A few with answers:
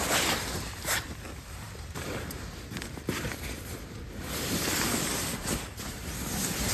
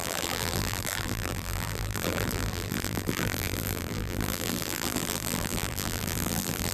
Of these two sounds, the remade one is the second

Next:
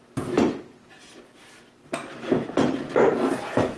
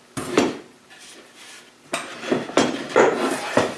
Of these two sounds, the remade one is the second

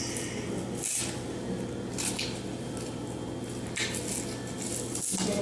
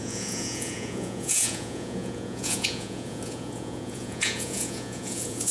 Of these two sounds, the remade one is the second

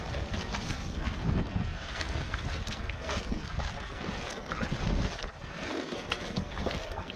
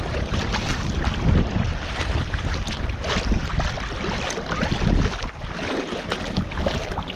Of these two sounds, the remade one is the first